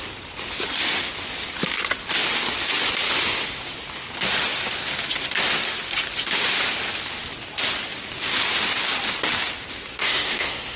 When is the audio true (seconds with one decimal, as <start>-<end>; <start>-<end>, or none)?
0.0-9.9